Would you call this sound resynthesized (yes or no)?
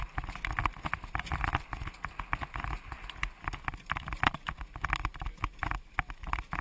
no